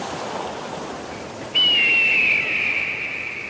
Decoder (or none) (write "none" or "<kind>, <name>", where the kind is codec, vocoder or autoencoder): none